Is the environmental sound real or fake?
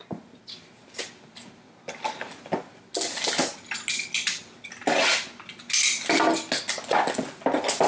real